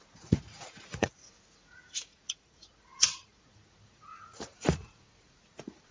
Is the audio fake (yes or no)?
yes